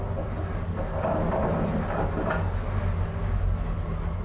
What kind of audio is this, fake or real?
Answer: real